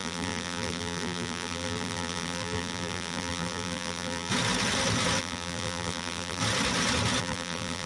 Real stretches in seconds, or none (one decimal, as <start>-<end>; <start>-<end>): 4.3-5.2; 6.4-7.2